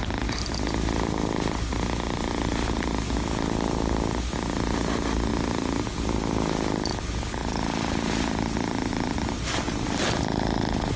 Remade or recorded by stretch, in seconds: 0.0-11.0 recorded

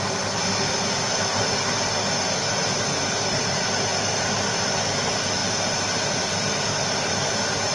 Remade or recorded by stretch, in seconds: 0.0-2.6 recorded; 2.6-3.4 remade; 3.4-5.4 recorded; 5.4-6.3 remade; 6.3-7.7 recorded

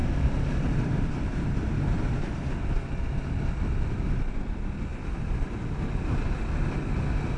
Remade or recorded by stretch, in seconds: 0.0-2.5 remade; 2.5-7.4 recorded

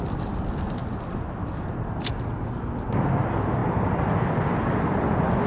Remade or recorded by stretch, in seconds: 0.0-0.8 recorded; 0.8-2.9 remade; 2.9-3.6 recorded; 3.6-5.5 remade

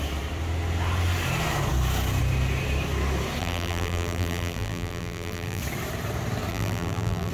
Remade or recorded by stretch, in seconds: 0.0-3.4 recorded; 3.4-5.6 remade; 5.6-6.5 recorded; 6.5-7.3 remade

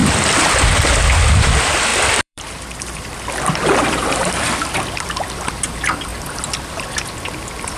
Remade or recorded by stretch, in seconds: 0.0-0.9 remade; 0.9-1.9 recorded; 1.9-2.5 remade; 2.5-7.8 recorded

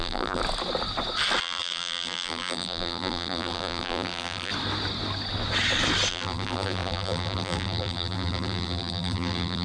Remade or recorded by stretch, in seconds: 0.0-0.4 remade; 0.4-1.4 recorded; 1.4-4.5 remade; 4.5-6.1 recorded; 6.1-9.6 remade

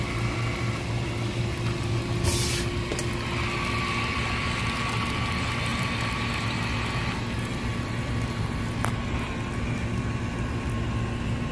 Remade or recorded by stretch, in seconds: 0.0-11.5 recorded